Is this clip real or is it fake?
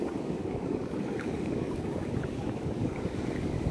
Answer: fake